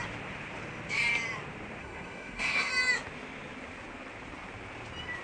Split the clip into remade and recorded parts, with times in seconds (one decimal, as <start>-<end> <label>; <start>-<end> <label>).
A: 0.0-1.8 recorded; 1.8-2.7 remade; 2.7-5.2 recorded